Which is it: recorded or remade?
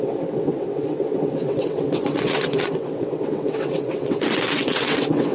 remade